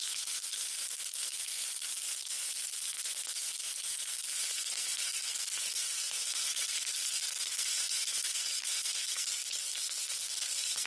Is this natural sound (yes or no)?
no